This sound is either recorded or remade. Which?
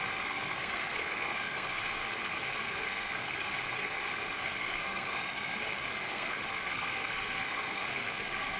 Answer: remade